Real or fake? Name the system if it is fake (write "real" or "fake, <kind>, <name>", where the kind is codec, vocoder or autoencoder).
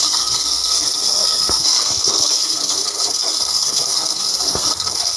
fake, codec, SNAC